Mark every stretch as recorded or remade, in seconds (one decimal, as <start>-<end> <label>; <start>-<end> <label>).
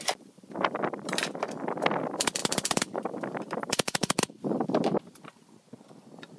0.0-6.4 recorded